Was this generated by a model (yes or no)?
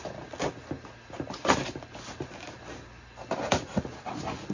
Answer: no